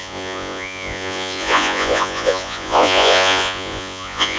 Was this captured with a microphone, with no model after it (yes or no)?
no